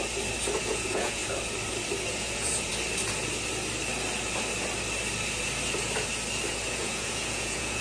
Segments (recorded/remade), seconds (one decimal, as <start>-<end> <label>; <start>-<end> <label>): 0.0-0.6 recorded; 0.6-1.2 remade; 1.2-2.1 recorded; 2.1-2.7 remade; 2.7-6.7 recorded; 6.7-7.8 remade